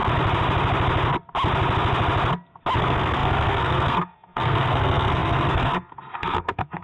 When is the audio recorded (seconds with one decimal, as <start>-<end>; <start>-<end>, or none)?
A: 0.0-2.8